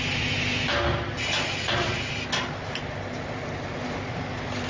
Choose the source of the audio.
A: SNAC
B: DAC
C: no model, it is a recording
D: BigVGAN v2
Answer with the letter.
C